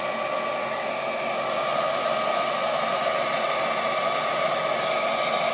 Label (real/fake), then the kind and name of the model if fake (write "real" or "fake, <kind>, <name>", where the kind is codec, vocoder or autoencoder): real